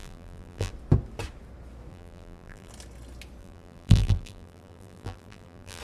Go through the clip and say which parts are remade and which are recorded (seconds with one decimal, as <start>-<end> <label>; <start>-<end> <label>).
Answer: 0.0-0.7 remade; 0.7-1.9 recorded; 1.9-2.7 remade; 2.7-3.4 recorded; 3.4-5.8 remade